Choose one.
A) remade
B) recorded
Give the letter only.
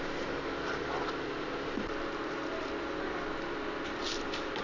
B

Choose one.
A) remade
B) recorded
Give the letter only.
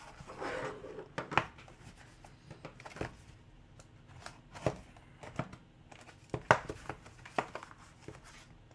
B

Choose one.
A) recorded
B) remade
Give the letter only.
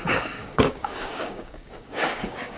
B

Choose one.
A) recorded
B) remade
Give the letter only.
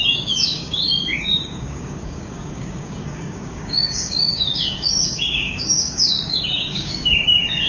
B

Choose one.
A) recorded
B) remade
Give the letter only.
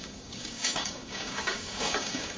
B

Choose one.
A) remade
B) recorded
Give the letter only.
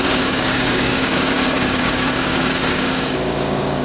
A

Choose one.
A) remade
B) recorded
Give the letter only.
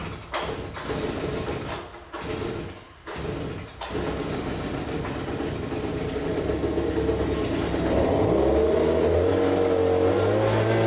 B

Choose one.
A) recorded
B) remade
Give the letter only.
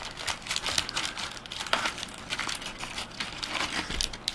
A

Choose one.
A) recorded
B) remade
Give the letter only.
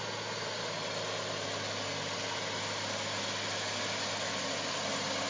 A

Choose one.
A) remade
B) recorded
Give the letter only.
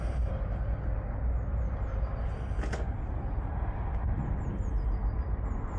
B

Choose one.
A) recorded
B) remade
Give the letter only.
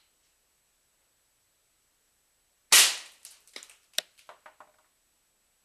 A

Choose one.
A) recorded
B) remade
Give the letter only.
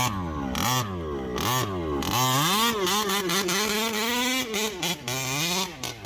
A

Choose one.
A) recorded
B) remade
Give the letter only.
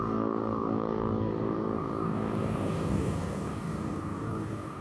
B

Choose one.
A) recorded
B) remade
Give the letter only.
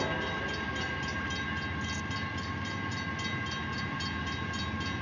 A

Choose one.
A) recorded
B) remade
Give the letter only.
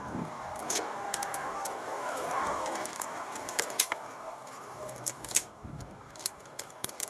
B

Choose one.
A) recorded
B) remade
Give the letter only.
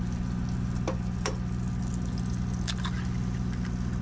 A